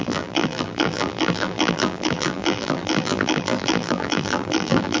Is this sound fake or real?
fake